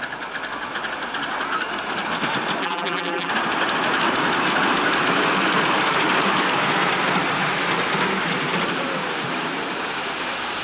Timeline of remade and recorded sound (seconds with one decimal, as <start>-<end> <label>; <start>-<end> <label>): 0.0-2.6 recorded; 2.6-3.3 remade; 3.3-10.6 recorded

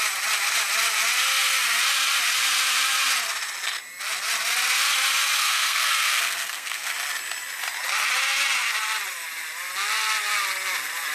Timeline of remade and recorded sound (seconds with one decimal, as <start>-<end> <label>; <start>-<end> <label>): 0.0-5.4 recorded; 5.4-6.9 remade; 6.9-11.1 recorded

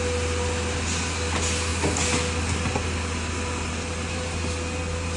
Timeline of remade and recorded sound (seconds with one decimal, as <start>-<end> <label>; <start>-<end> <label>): 0.0-5.2 recorded